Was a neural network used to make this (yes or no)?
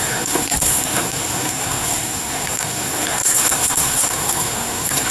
yes